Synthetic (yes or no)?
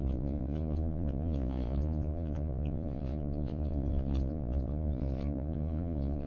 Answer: yes